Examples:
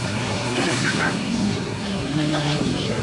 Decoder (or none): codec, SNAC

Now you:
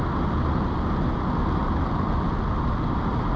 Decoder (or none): none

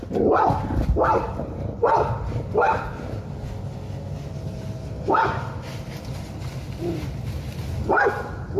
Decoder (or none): none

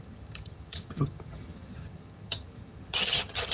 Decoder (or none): vocoder, HiFi-GAN